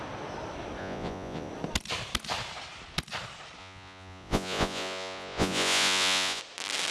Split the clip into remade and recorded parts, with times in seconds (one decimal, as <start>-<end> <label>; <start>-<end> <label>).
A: 0.0-0.8 recorded; 0.8-1.5 remade; 1.5-3.6 recorded; 3.6-6.4 remade; 6.4-6.9 recorded